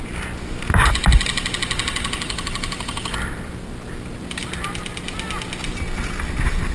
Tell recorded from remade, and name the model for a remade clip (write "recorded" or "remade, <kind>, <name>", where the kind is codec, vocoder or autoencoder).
recorded